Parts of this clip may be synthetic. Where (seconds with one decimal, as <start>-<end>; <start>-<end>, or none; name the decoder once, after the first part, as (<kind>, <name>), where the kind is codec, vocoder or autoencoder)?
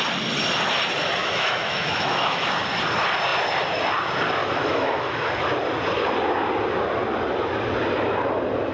1.2-2.5 (autoencoder, DAC-VAE); 4.4-5.3